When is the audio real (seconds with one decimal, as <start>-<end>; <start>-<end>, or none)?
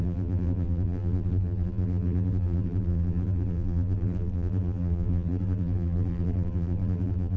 none